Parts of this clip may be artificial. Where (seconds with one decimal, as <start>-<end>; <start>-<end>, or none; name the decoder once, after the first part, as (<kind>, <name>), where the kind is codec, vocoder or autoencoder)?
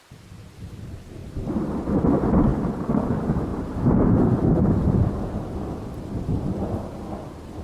1.2-1.9 (vocoder, BigVGAN v2); 3.5-5.1